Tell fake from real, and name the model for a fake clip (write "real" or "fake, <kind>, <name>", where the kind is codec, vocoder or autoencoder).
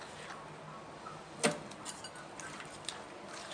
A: real